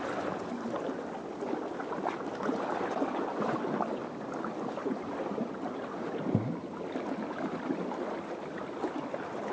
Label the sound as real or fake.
real